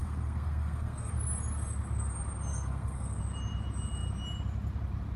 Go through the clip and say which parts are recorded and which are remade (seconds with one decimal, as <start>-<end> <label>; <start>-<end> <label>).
0.0-1.1 remade; 1.1-2.5 recorded; 2.5-3.2 remade; 3.2-5.2 recorded